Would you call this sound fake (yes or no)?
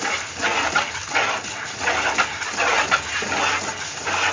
no